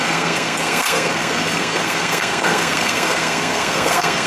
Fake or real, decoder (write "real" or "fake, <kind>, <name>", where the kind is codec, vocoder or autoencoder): fake, codec, SNAC